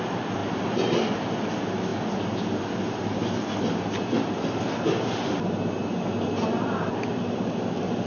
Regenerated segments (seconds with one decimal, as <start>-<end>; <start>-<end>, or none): none